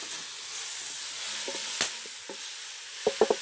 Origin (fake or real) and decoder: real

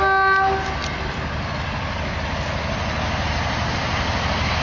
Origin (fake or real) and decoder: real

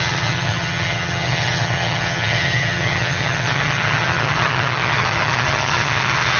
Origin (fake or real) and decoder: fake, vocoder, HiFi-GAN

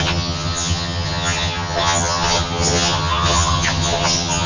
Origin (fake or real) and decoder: fake, vocoder, HiFi-GAN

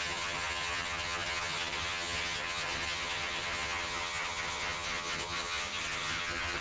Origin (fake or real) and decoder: fake, vocoder, HiFi-GAN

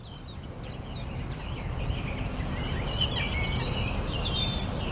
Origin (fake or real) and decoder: real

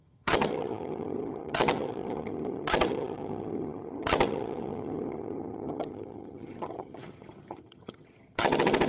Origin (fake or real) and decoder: fake, vocoder, HiFi-GAN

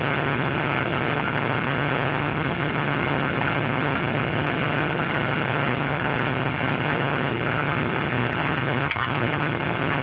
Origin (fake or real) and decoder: fake, vocoder, HiFi-GAN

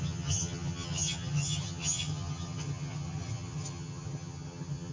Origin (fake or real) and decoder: fake, vocoder, HiFi-GAN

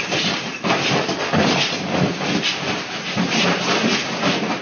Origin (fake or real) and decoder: real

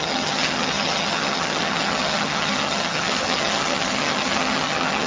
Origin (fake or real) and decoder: fake, vocoder, HiFi-GAN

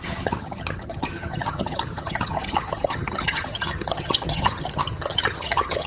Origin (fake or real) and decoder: fake, vocoder, HiFi-GAN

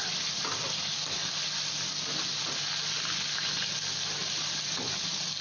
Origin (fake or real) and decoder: real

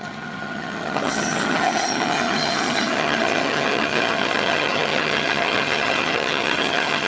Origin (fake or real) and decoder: fake, vocoder, HiFi-GAN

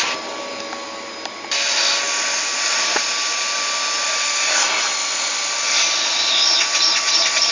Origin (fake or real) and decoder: real